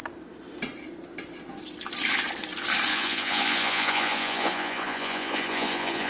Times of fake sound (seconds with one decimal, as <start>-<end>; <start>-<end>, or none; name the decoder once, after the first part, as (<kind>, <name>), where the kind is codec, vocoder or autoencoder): 2.9-6.1 (vocoder, Vocos)